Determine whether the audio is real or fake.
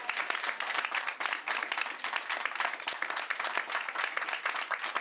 real